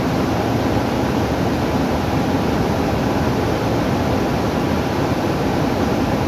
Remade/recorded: recorded